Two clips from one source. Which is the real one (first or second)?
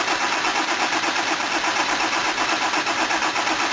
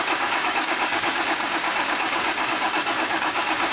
first